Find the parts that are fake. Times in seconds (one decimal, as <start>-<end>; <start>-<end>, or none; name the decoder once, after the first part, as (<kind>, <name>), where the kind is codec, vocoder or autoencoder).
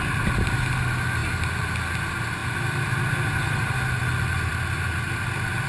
none